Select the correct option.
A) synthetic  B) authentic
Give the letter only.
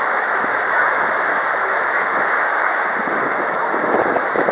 A